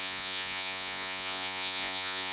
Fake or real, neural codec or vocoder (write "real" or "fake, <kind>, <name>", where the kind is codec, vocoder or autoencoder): fake, vocoder, Vocos